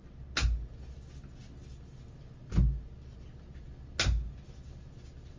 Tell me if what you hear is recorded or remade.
recorded